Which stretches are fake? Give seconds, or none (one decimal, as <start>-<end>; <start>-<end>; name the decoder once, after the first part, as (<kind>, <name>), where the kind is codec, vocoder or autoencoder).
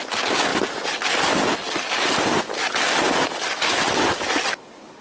none